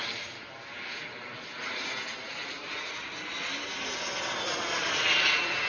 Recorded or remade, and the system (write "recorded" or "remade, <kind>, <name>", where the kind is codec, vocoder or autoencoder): recorded